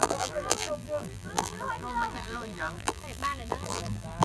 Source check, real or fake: fake